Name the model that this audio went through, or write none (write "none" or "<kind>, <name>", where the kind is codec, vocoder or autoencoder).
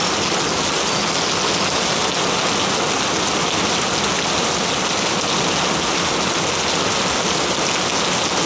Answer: none